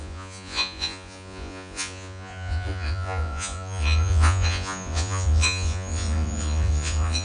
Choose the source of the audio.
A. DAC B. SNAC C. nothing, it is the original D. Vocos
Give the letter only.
D